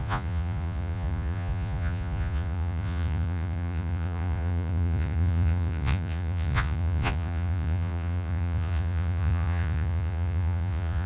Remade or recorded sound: remade